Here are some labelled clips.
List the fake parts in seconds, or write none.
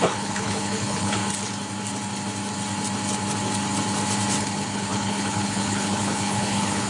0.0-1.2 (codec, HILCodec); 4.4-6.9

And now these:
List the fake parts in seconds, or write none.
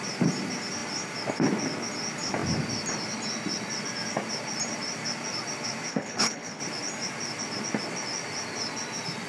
5.9-6.6 (codec, HILCodec)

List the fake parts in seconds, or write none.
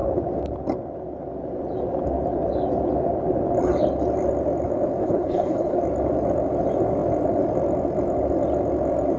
5.0-5.8 (codec, HILCodec)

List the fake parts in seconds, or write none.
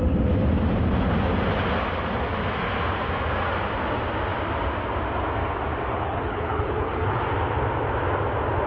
5.9-7.2 (codec, HILCodec)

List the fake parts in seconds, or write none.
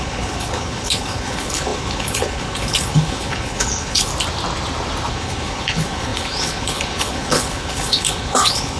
0.0-4.1 (codec, HILCodec); 5.1-8.8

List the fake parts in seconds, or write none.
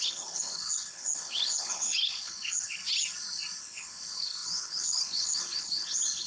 0.0-2.8 (codec, HILCodec); 3.6-6.3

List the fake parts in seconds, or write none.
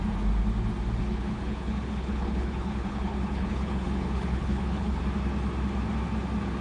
1.0-5.0 (codec, HILCodec)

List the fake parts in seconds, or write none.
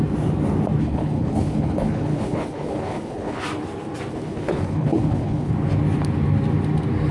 0.8-3.4 (codec, HILCodec); 4.1-5.5